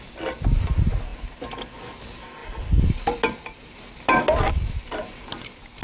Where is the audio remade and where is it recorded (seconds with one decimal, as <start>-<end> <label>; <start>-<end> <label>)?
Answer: 0.0-5.8 recorded